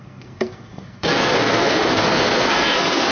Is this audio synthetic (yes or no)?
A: yes